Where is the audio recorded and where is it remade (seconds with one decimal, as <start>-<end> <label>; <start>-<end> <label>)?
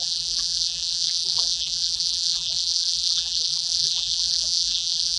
0.0-5.2 remade